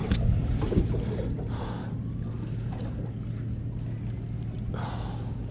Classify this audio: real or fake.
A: real